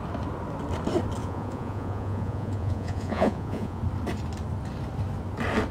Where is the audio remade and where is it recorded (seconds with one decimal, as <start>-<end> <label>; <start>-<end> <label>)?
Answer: 0.0-1.2 recorded; 1.2-3.8 remade; 3.8-5.7 recorded